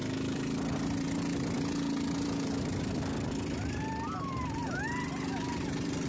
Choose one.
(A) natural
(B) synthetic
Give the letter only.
B